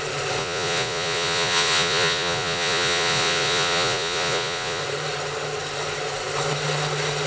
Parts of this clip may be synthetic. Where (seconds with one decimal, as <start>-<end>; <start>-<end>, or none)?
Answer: 0.4-4.8